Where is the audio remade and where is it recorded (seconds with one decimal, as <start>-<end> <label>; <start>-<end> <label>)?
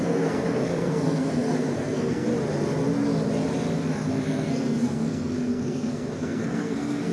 0.0-2.3 remade; 2.3-4.1 recorded; 4.1-7.1 remade